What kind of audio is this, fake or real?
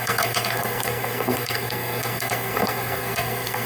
fake